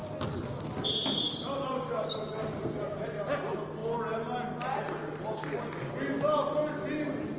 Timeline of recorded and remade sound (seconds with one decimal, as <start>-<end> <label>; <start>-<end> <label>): 0.0-7.4 recorded